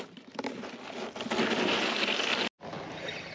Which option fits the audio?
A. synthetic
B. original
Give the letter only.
B